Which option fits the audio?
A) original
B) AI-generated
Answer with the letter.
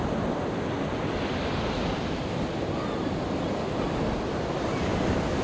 A